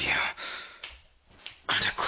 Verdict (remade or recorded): remade